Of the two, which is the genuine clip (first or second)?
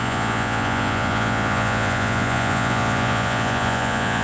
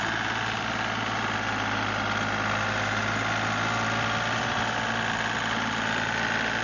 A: second